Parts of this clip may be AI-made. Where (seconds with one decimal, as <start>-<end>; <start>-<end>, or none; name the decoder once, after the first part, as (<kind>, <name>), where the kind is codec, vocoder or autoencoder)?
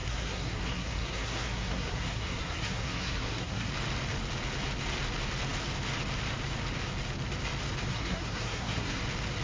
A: 0.0-3.7 (codec, SNAC); 7.9-9.0